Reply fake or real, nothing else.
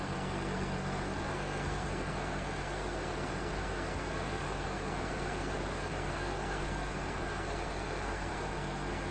fake